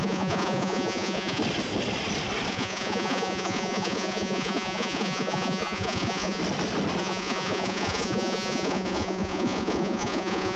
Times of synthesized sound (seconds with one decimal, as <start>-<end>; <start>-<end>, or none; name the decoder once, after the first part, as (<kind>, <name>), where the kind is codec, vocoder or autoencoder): 0.0-1.4 (vocoder, Vocos); 2.5-6.4; 7.0-10.6